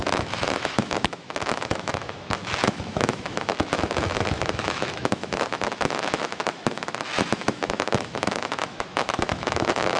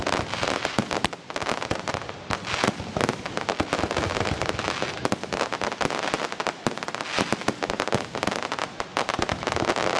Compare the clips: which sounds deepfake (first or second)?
first